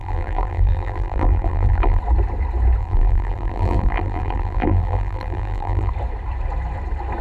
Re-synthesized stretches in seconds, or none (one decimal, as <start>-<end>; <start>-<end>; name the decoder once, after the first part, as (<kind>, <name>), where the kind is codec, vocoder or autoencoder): 0.0-2.0 (vocoder, BigVGAN v2); 2.8-5.9